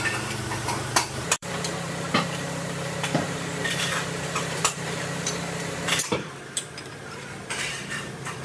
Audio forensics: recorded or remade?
remade